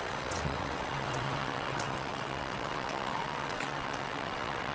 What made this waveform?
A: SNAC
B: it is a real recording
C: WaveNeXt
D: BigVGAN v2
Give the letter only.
C